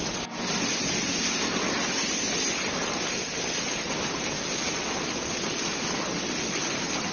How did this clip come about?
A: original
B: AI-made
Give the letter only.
A